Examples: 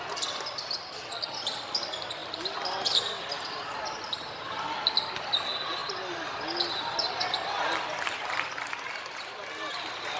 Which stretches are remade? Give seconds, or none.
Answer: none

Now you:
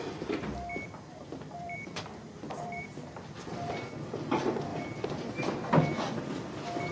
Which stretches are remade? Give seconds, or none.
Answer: 1.6-3.7 (vocoder, BigVGAN v2); 4.7-6.3